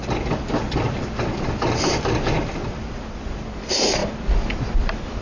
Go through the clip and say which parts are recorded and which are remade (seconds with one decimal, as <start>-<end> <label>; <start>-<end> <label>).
0.0-4.0 remade; 4.0-4.8 recorded; 4.8-5.2 remade